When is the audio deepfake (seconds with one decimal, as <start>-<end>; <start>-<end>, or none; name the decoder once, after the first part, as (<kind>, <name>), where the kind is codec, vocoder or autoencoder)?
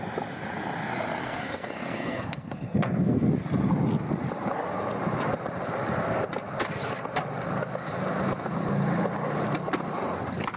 1.2-3.3 (codec, SNAC)